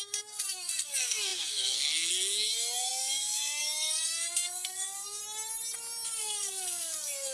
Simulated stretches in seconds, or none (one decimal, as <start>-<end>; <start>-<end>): 0.0-5.2; 6.2-7.3